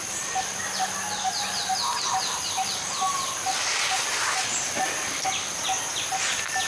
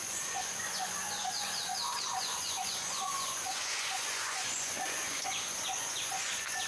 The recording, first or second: first